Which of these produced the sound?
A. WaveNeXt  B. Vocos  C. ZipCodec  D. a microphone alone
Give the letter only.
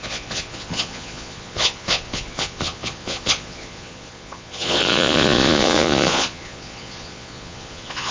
B